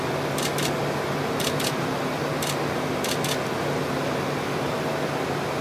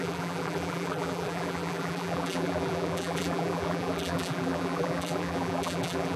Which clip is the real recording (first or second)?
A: first